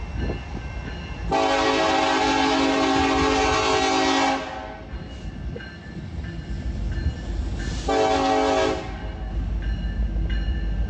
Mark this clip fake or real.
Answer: real